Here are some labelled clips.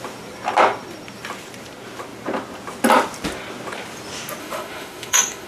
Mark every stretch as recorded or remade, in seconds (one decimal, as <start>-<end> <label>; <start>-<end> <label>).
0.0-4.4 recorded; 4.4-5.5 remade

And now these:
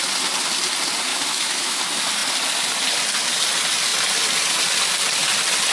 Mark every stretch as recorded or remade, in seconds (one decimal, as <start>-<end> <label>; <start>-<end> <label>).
0.0-1.1 recorded; 1.1-1.8 remade; 1.8-5.7 recorded

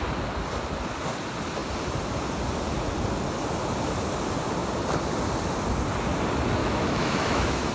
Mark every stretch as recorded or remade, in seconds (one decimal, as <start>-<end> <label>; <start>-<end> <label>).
0.0-6.6 recorded; 6.6-7.7 remade

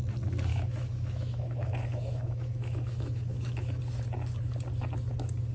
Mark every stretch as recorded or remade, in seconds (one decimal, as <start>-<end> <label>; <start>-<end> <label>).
0.0-0.5 recorded; 0.5-3.8 remade; 3.8-5.5 recorded